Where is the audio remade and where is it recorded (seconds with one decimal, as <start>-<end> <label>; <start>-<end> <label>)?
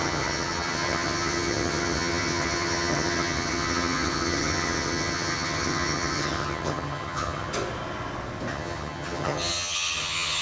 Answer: 0.0-7.5 remade; 7.5-8.5 recorded; 8.5-10.4 remade